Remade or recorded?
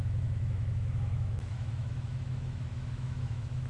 remade